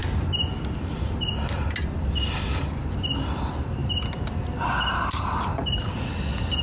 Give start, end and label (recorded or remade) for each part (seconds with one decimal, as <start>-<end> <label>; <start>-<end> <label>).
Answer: 0.0-6.6 recorded